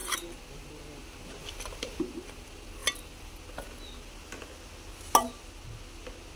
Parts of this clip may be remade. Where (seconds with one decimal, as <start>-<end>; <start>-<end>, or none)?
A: 1.4-2.0; 2.8-3.4